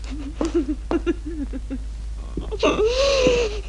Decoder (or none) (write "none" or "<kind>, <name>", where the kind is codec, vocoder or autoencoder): none